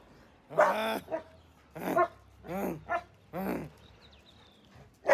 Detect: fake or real real